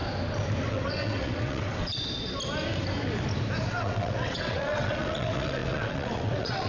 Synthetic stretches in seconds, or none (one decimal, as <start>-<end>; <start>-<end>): 0.7-1.9; 3.7-6.7